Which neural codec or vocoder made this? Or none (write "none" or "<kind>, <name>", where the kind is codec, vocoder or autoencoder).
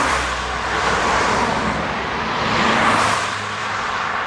vocoder, BigVGAN v2